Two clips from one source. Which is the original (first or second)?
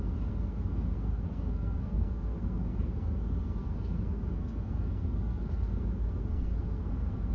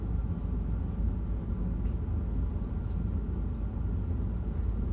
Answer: second